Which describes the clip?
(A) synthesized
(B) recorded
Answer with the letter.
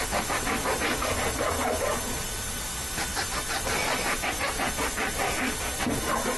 B